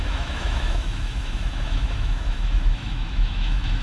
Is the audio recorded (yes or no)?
no